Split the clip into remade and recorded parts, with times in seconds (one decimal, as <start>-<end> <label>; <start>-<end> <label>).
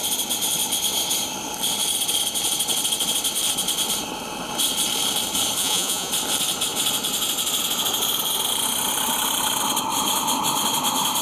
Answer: 0.0-5.6 recorded; 5.6-6.1 remade; 6.1-11.2 recorded